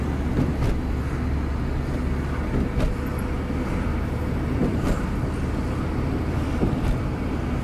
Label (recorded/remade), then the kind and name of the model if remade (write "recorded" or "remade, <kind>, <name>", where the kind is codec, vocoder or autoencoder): recorded